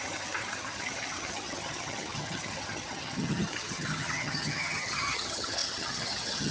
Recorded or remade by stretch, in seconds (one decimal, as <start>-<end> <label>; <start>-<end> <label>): 0.0-6.5 remade